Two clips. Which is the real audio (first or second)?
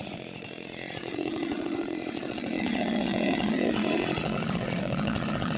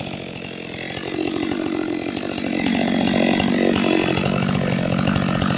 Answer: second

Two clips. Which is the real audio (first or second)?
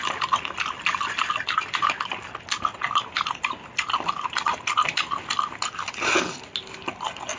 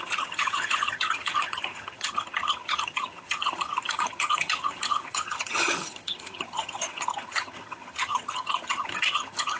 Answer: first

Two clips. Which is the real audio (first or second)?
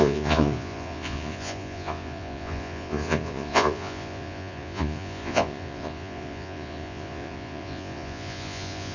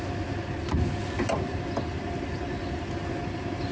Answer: second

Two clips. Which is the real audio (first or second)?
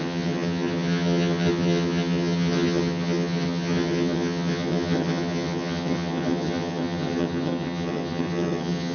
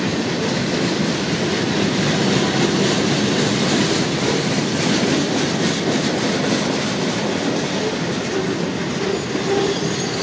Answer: second